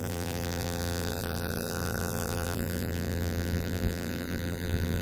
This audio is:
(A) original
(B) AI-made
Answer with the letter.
B